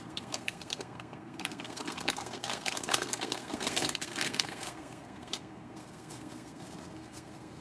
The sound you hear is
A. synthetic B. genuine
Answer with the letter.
A